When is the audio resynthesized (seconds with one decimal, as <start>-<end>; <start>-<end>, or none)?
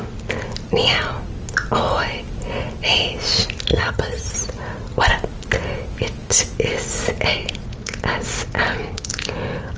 3.7-4.3